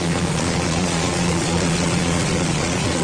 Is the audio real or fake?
fake